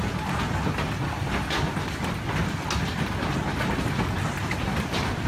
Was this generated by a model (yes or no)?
no